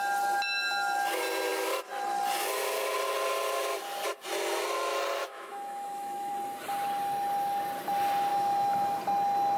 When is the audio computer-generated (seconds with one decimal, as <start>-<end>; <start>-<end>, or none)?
5.2-6.3; 8.3-9.0